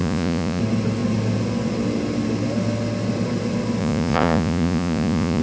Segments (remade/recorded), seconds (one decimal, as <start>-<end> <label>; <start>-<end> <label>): 0.0-0.6 remade; 0.6-3.8 recorded; 3.8-5.4 remade